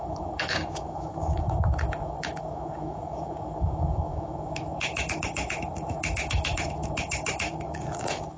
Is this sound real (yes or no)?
no